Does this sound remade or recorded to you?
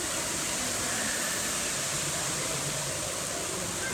recorded